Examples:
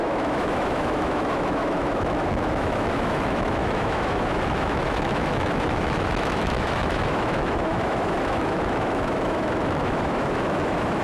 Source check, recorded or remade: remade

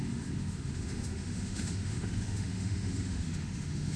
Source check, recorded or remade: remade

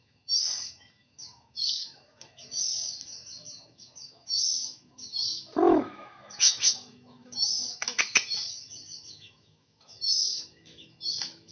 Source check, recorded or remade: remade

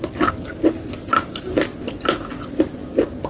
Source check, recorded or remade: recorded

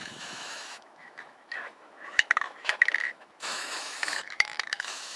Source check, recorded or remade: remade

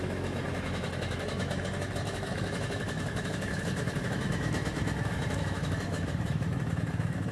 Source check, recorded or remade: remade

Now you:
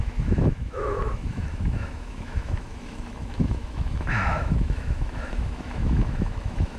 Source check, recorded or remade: remade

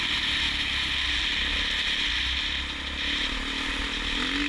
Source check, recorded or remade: recorded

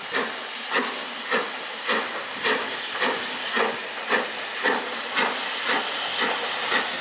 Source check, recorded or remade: recorded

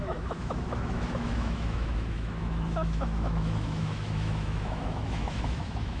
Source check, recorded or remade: remade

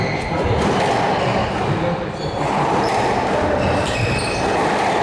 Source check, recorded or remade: recorded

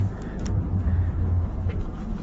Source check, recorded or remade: recorded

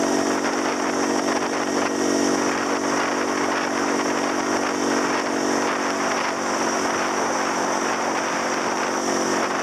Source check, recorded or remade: recorded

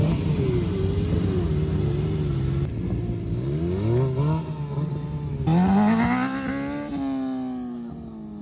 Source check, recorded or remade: recorded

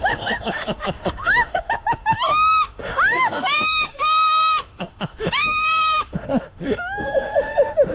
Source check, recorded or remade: remade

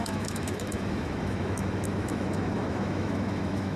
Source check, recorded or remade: remade